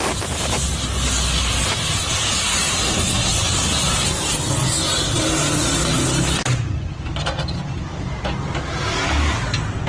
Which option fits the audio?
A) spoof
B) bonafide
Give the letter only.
B